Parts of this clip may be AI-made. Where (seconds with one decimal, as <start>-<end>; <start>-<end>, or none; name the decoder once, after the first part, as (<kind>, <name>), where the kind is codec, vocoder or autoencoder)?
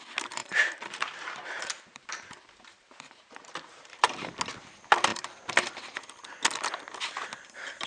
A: 0.4-4.3 (vocoder, BigVGAN v2)